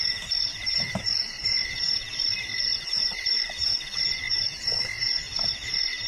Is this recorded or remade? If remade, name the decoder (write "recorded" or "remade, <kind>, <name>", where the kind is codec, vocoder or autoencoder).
recorded